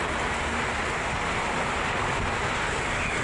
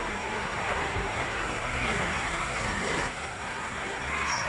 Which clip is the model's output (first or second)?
second